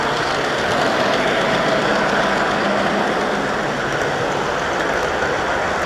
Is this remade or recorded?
recorded